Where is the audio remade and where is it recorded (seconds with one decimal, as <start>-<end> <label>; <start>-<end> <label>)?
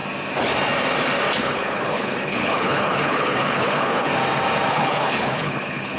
0.0-1.4 recorded; 1.4-4.1 remade; 4.1-4.7 recorded; 4.7-6.0 remade